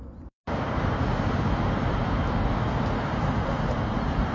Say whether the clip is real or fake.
real